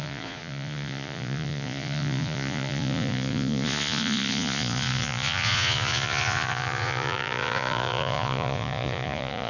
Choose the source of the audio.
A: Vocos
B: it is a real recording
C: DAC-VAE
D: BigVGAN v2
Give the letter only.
A